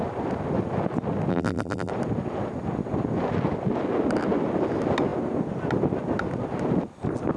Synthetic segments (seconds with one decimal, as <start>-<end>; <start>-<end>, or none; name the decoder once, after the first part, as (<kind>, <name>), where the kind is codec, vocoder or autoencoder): 1.3-1.9 (vocoder, BigVGAN v2)